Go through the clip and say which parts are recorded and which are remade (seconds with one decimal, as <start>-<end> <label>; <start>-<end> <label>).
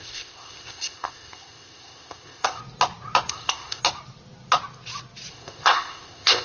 0.0-2.6 remade; 2.6-3.3 recorded; 3.3-3.8 remade; 3.8-5.3 recorded; 5.3-6.4 remade